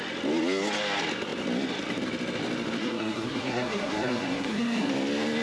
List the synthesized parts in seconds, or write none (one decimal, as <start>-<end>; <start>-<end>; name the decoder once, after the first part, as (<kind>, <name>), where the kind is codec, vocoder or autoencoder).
2.8-4.9 (codec, SNAC)